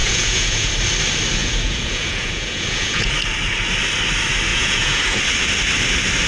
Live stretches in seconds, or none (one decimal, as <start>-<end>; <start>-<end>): 0.7-1.4; 3.1-4.5; 5.2-6.3